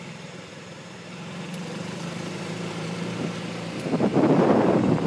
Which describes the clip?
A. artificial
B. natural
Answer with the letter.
A